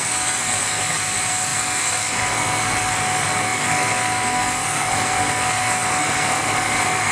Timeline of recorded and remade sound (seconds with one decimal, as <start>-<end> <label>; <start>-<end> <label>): 0.0-7.1 remade